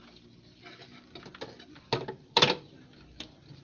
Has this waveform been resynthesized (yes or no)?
no